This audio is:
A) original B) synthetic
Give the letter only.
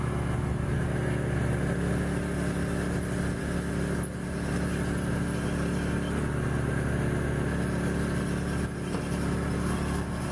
A